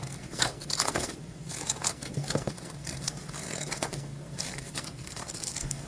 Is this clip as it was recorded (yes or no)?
no